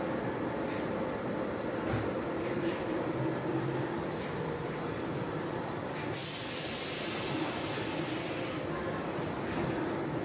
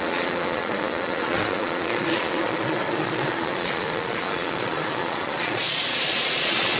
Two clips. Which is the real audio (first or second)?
first